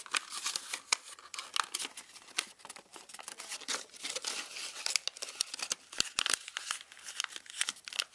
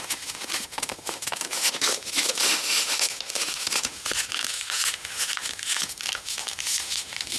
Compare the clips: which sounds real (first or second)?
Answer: first